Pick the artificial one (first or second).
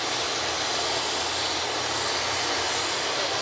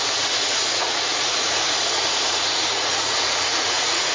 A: second